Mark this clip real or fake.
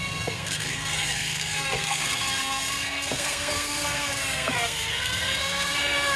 fake